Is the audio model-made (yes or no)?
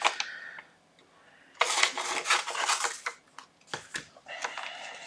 no